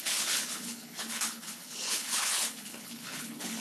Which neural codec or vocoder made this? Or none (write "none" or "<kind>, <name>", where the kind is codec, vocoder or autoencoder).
codec, HILCodec